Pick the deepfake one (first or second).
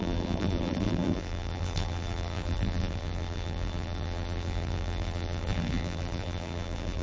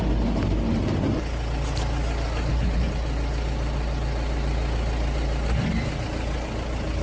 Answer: first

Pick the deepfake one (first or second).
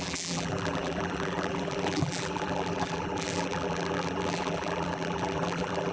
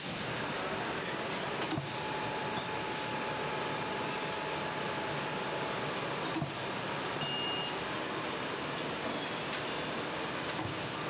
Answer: first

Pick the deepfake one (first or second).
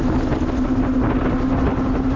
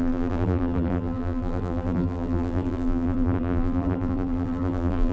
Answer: second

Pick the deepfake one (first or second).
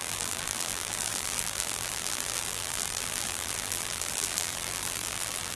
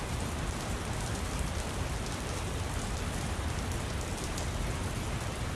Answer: first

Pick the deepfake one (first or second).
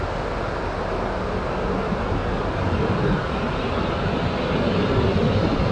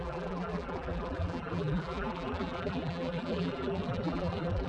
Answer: second